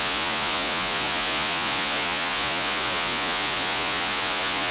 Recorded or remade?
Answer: remade